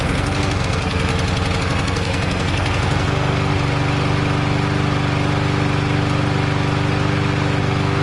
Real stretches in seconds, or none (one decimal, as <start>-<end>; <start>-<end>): 1.1-1.6; 3.5-7.6